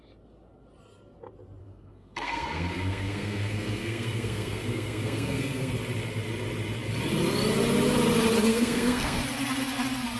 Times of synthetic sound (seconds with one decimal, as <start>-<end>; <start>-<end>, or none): 1.6-5.7; 8.5-9.2